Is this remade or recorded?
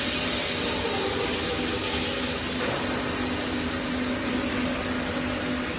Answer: recorded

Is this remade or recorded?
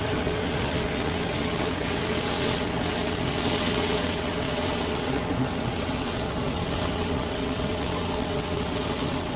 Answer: remade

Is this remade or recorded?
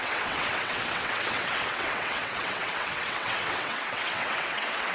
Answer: remade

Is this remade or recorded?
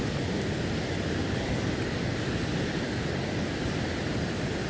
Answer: recorded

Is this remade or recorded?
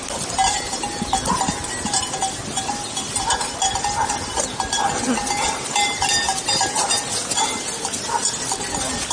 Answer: recorded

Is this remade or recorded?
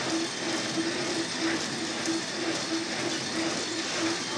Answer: recorded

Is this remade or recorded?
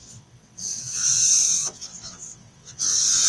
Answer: remade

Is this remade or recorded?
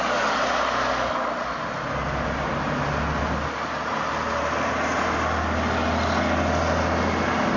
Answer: recorded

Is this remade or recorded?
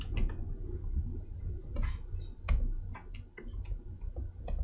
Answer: recorded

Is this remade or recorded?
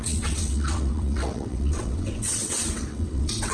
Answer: remade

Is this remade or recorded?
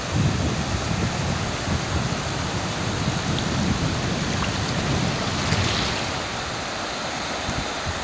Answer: recorded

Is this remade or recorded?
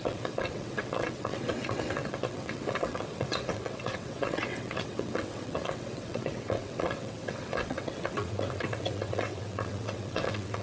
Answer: remade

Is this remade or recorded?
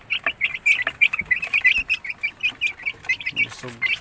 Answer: recorded